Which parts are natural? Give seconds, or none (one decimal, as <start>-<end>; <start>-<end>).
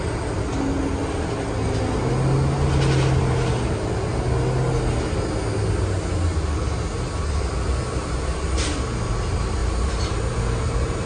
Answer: 0.0-11.1